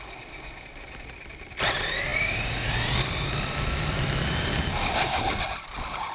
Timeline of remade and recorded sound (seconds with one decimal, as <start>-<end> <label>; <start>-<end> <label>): 0.0-6.1 recorded